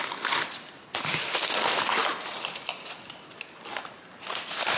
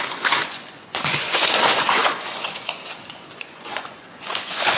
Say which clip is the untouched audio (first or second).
first